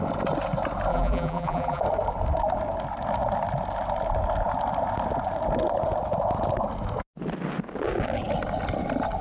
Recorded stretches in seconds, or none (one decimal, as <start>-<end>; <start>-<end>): 0.0-0.9; 1.8-9.2

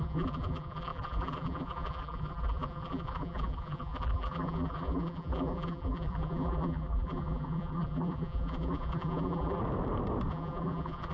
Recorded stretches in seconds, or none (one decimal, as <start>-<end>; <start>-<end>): 9.6-10.3

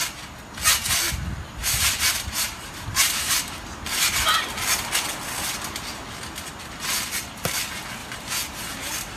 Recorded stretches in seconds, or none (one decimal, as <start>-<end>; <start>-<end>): 0.0-1.6; 4.5-8.0

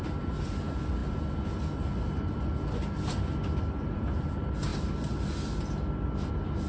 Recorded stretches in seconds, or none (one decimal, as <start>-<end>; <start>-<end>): 0.0-6.7